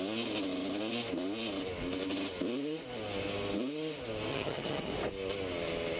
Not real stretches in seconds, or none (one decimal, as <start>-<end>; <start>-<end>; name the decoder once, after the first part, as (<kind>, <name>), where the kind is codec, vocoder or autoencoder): 4.3-4.9 (vocoder, HiFi-GAN)